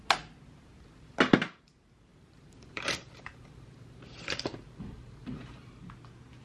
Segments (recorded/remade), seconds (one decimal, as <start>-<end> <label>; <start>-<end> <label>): 0.0-2.1 recorded; 2.1-5.7 remade; 5.7-6.4 recorded